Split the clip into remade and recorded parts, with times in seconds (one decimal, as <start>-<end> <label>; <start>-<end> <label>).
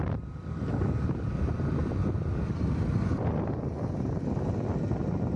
0.0-5.4 recorded